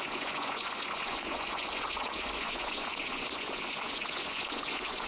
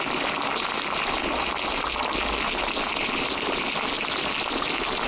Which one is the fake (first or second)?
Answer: first